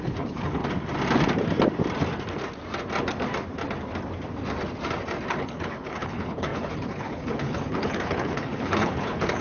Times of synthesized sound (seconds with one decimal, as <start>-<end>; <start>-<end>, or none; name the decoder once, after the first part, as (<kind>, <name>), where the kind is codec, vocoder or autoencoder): 0.0-0.6 (codec, HILCodec); 5.3-9.4